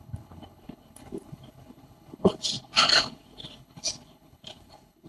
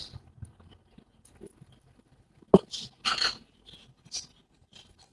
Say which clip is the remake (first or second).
first